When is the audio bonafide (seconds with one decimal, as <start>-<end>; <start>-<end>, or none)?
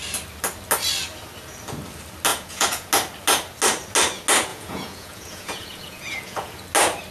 0.0-2.3; 2.9-4.5; 6.6-7.1